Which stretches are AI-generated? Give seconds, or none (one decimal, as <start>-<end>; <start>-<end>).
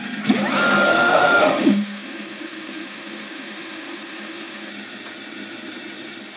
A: 0.9-4.7